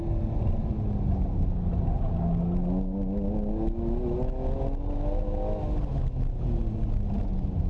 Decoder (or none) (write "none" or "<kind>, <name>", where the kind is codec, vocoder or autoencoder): none